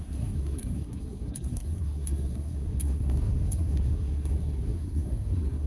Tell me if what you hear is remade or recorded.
remade